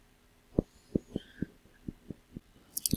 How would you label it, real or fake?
real